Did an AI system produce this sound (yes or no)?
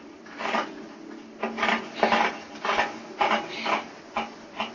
no